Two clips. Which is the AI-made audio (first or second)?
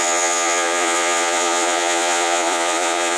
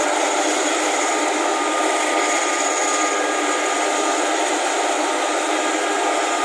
first